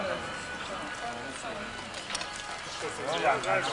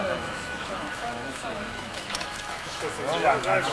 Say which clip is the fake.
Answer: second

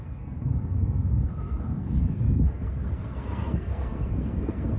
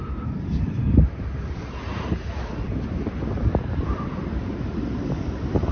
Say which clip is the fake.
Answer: first